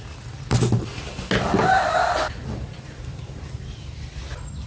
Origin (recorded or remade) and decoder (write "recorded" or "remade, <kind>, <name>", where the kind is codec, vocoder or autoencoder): recorded